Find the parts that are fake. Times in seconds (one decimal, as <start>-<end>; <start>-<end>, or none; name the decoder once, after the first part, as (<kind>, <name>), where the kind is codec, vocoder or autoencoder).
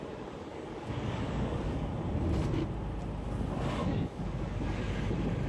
0.5-1.9 (codec, DAC); 3.8-5.0